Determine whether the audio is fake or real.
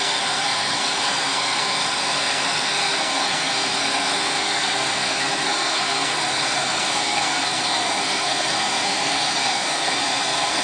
fake